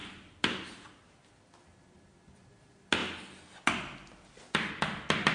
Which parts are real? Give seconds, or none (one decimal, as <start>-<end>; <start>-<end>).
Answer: 0.0-5.3